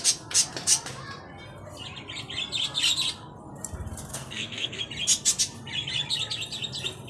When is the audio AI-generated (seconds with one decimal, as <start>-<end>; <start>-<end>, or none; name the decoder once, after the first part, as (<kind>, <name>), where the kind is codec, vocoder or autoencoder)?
4.1-4.8 (codec, SNAC)